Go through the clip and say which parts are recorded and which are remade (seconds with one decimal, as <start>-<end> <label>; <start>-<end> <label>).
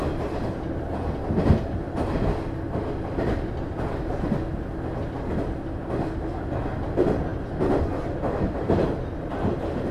0.0-9.9 recorded